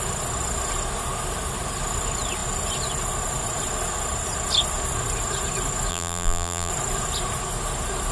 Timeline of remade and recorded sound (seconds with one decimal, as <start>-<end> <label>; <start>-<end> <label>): 0.0-5.9 recorded; 5.9-6.7 remade; 6.7-8.1 recorded